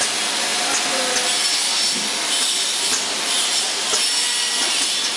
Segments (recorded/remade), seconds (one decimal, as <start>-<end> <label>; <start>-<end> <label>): 0.0-5.2 recorded